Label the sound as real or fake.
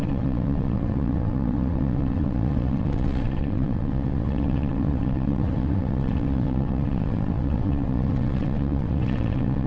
fake